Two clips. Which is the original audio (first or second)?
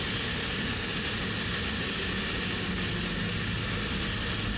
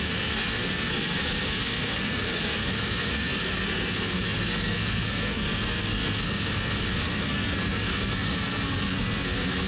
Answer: first